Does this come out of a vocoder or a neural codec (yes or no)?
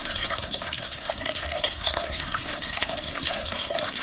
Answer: yes